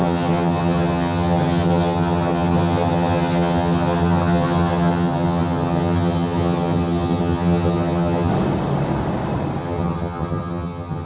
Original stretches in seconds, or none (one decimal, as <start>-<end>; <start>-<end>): 8.3-9.6